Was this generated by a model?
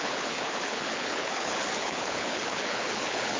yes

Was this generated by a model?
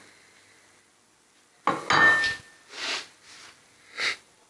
no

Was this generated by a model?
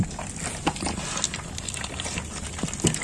no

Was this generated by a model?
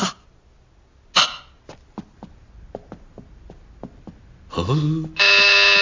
no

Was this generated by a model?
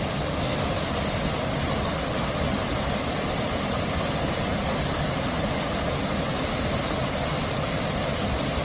no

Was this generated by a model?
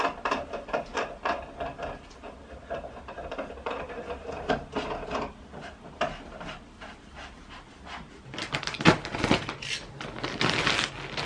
no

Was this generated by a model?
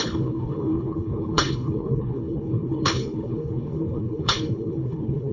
yes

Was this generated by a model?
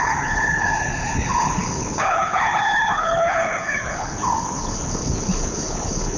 yes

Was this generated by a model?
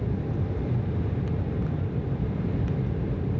no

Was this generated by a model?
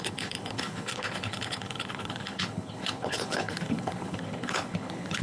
yes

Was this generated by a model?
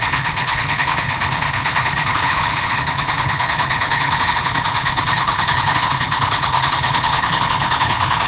yes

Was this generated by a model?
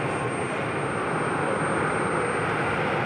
no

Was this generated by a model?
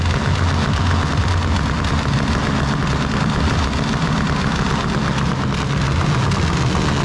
no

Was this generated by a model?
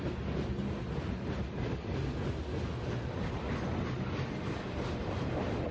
no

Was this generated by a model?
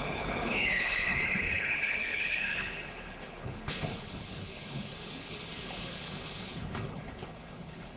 yes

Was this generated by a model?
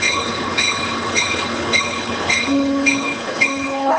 yes